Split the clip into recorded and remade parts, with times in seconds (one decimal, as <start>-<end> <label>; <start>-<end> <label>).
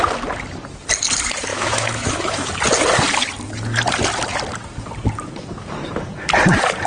0.0-1.5 recorded; 1.5-2.5 remade; 2.5-6.9 recorded